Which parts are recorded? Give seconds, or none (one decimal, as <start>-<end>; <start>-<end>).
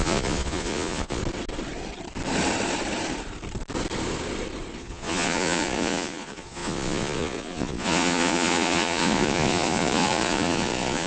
1.2-4.8